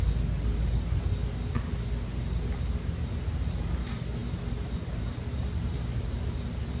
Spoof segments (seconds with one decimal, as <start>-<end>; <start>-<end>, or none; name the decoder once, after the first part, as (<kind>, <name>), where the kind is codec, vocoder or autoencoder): none